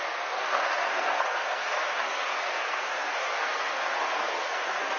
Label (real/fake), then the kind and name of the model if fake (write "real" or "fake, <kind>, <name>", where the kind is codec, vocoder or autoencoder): fake, codec, SNAC